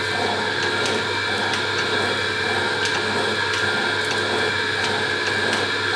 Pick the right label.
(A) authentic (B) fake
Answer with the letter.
A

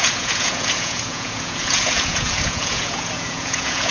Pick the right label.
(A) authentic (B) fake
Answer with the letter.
B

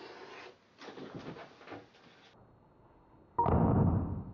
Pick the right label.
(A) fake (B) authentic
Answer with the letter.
B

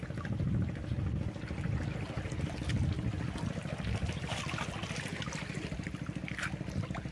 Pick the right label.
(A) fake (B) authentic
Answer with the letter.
B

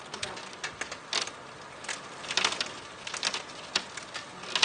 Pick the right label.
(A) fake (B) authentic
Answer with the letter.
B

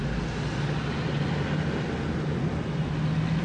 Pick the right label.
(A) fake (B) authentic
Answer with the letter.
B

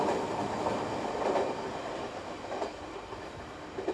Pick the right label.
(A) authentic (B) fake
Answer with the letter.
A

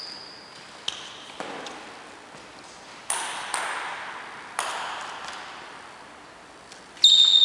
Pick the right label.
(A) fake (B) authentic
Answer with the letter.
B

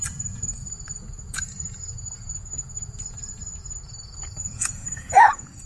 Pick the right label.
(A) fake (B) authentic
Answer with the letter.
A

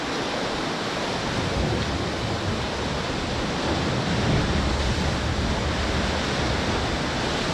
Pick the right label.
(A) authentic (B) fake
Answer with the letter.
A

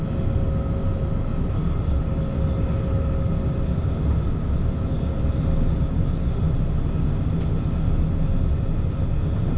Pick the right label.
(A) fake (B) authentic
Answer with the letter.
B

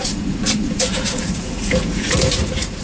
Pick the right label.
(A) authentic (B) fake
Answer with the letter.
B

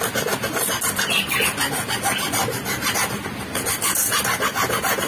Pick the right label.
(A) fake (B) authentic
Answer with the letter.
B